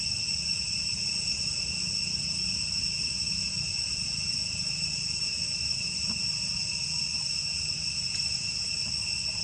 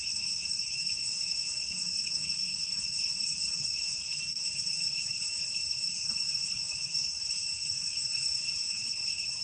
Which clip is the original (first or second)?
first